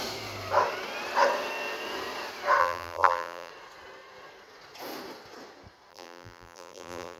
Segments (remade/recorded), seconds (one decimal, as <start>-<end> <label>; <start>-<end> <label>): 0.0-2.6 recorded; 2.6-3.5 remade; 3.5-5.9 recorded; 5.9-7.2 remade